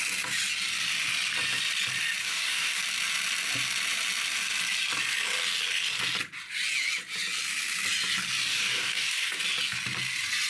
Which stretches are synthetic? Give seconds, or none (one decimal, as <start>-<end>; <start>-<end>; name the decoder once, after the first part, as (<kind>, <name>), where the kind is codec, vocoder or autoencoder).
2.2-2.8 (codec, DAC); 8.5-9.4